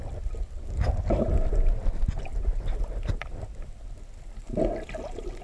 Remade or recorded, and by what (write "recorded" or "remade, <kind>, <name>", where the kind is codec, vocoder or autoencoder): recorded